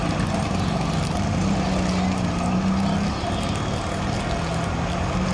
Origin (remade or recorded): recorded